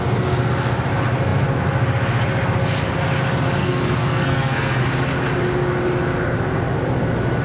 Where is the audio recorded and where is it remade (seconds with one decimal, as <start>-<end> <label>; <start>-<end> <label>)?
0.0-3.6 recorded; 3.6-4.8 remade; 4.8-7.4 recorded